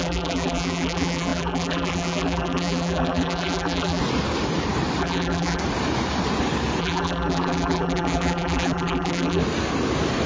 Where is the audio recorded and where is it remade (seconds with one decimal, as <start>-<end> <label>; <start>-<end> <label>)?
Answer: 0.0-4.0 remade; 4.0-5.0 recorded; 5.0-5.6 remade; 5.6-6.8 recorded; 6.8-9.4 remade; 9.4-10.3 recorded

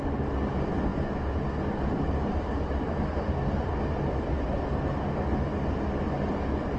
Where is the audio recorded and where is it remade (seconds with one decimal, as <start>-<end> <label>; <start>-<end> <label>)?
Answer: 0.0-6.8 recorded

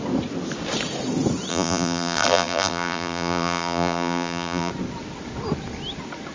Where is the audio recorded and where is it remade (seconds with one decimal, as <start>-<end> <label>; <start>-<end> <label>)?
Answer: 0.0-1.5 recorded; 1.5-4.7 remade; 4.7-6.3 recorded

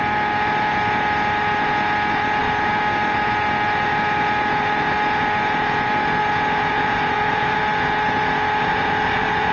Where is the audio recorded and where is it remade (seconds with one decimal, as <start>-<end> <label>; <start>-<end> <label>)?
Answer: 0.0-6.7 recorded; 6.7-7.6 remade; 7.6-8.7 recorded; 8.7-9.5 remade

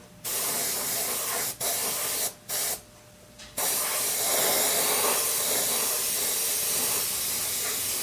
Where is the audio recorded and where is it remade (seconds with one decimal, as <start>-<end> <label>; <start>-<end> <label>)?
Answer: 0.0-8.0 recorded

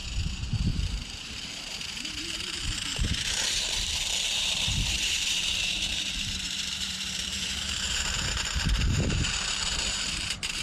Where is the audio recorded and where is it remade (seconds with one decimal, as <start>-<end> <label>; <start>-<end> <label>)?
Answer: 0.0-0.7 recorded; 0.7-10.6 remade

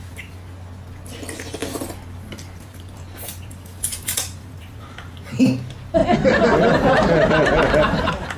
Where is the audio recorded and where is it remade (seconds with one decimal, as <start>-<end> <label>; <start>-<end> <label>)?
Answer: 0.0-1.6 recorded; 1.6-2.8 remade; 2.8-3.3 recorded; 3.3-5.1 remade; 5.1-6.0 recorded; 6.0-8.4 remade

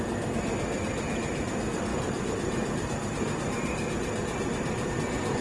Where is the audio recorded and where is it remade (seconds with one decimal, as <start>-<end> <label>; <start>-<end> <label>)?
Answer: 0.0-1.9 recorded; 1.9-4.9 remade; 4.9-5.4 recorded